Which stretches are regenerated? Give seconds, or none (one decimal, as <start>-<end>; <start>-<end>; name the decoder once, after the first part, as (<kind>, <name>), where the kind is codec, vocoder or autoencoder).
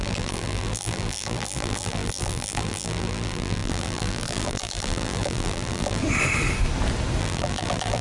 0.0-6.0 (vocoder, BigVGAN v2); 7.2-8.0